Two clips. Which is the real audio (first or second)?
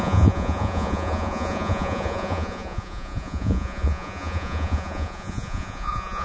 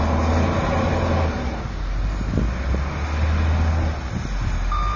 second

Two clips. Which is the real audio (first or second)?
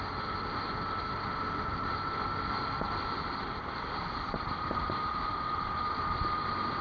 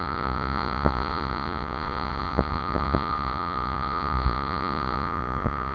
first